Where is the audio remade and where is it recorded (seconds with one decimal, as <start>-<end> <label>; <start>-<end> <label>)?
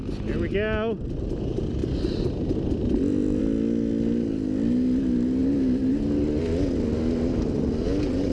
0.0-1.8 recorded; 1.8-3.4 remade; 3.4-8.3 recorded